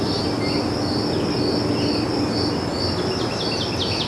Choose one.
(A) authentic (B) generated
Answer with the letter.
A